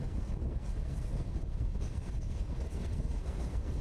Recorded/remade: remade